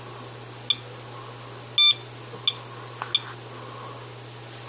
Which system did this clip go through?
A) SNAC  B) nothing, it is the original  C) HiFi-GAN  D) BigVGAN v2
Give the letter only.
B